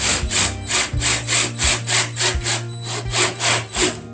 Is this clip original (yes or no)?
yes